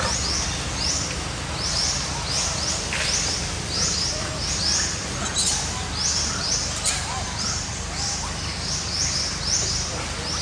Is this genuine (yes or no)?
yes